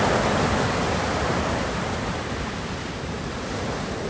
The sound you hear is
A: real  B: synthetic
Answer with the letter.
A